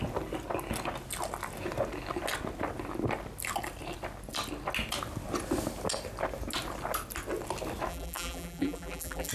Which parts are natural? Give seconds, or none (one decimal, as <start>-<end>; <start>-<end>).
0.0-7.9